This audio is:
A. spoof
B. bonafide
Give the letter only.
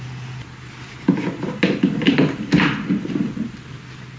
B